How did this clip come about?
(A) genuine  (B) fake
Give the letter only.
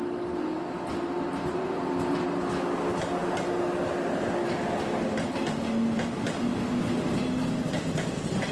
A